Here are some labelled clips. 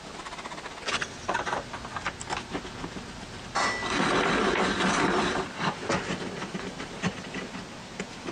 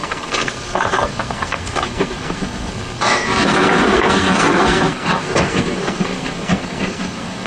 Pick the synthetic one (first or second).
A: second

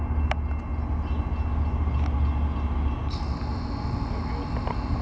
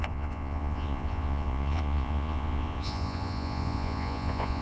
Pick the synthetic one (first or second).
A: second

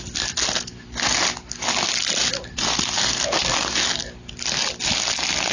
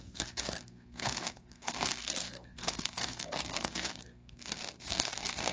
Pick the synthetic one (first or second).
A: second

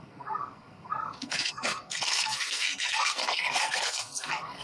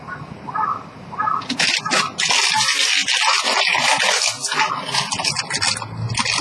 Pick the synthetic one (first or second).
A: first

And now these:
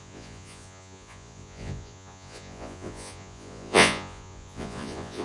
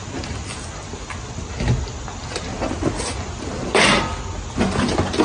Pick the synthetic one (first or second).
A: first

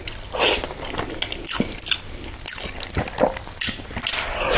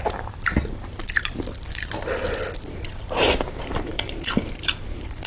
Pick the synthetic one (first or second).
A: second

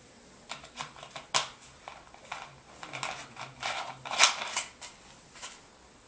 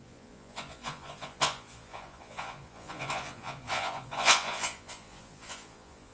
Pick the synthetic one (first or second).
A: second